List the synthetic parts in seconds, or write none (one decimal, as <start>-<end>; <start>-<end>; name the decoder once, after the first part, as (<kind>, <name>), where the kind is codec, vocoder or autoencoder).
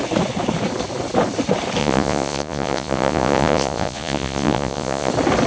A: 1.8-5.1 (vocoder, Vocos)